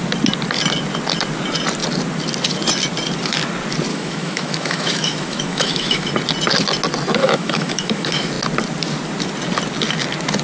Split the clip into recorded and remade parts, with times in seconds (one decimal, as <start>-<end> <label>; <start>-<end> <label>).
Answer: 0.0-3.9 recorded; 3.9-6.1 remade; 6.1-7.2 recorded; 7.2-8.3 remade; 8.3-10.4 recorded